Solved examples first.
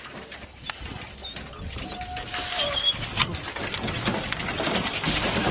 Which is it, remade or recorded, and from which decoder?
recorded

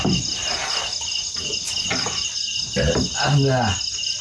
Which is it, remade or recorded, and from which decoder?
recorded